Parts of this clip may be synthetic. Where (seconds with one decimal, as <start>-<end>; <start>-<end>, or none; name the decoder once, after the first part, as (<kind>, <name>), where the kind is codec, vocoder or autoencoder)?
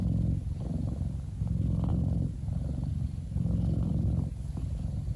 1.9-5.2 (vocoder, BigVGAN v2)